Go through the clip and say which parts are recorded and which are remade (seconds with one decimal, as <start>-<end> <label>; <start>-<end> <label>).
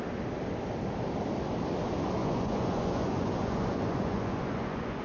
0.0-2.2 recorded; 2.2-5.0 remade